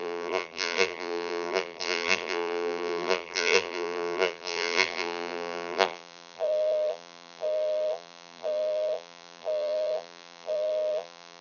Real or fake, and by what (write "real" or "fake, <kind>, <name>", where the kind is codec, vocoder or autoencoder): fake, vocoder, BigVGAN v2